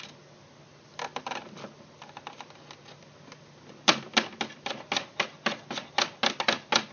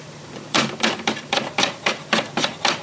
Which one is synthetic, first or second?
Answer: second